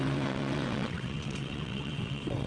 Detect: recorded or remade remade